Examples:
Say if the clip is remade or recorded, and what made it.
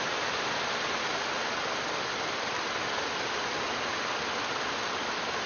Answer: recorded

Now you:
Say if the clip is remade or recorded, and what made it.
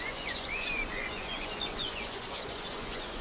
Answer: remade, vocoder, Vocos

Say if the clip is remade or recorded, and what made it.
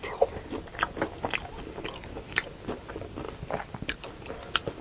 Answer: recorded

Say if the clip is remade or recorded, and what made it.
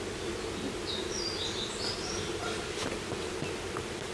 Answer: recorded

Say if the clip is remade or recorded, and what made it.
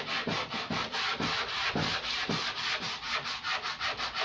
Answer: recorded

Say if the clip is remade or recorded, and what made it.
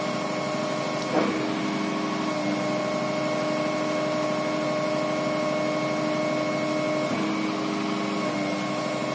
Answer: recorded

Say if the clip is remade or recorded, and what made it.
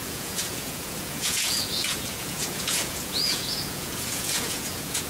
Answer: remade, vocoder, Vocos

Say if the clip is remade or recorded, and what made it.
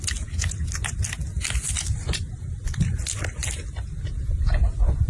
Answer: recorded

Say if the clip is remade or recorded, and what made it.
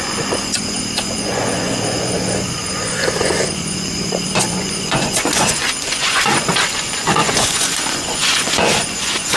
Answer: remade, vocoder, Vocos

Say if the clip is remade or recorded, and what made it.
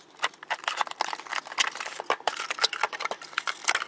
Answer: recorded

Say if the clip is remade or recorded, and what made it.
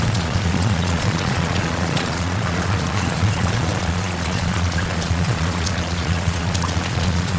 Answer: remade, vocoder, Vocos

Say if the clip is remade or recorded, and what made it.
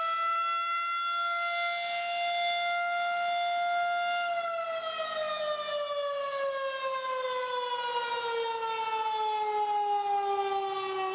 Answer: recorded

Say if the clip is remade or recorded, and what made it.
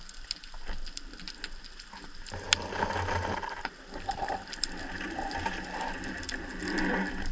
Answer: recorded